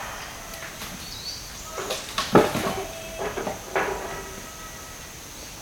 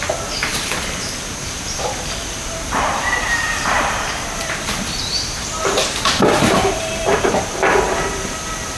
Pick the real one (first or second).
first